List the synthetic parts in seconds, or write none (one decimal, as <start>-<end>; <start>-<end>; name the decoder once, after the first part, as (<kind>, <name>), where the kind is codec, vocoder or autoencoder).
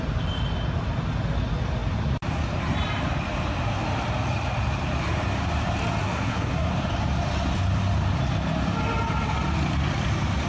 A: 6.0-6.7 (codec, SNAC)